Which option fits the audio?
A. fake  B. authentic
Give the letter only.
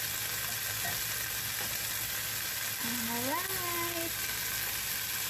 B